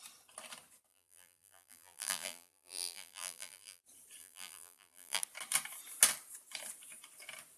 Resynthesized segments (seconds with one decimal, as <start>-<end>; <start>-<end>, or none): 0.9-3.8; 4.2-5.2